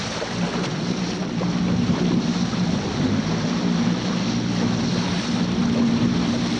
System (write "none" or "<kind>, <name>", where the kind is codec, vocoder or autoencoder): none